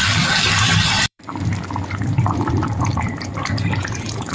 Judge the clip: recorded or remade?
remade